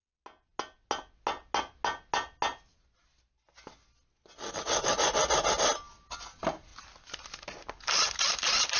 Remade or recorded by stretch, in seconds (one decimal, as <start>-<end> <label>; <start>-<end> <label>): 0.0-8.8 recorded

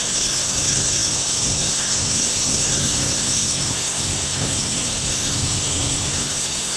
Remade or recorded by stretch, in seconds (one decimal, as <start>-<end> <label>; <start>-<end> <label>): 0.0-6.8 remade

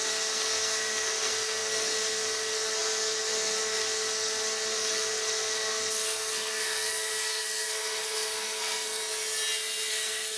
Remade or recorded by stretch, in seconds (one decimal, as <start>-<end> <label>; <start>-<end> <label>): 0.0-9.0 remade; 9.0-9.9 recorded; 9.9-10.4 remade